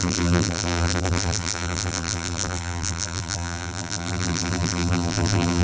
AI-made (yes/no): yes